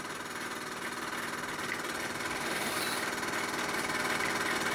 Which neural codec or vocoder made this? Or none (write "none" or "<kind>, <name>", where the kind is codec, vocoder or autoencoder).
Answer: none